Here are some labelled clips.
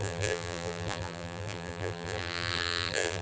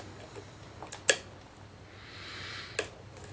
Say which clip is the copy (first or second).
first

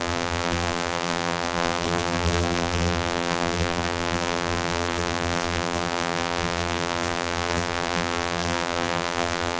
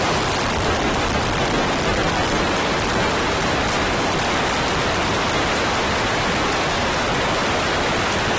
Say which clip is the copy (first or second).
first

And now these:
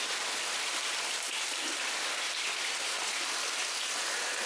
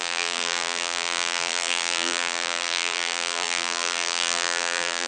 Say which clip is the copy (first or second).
second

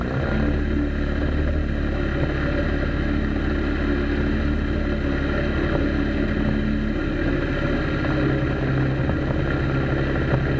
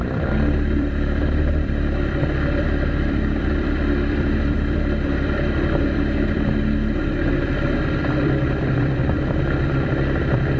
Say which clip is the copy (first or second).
second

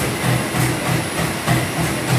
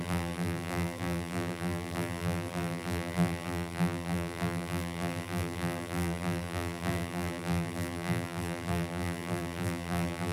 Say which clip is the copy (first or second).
second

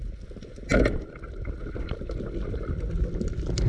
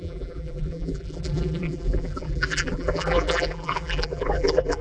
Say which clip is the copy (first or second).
second